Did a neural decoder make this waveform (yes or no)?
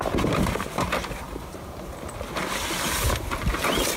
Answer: no